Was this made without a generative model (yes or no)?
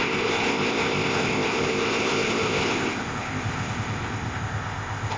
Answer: no